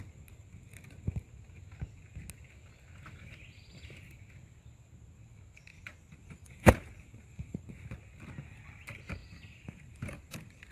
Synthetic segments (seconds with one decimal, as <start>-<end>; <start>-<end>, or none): 5.7-7.6; 9.2-10.7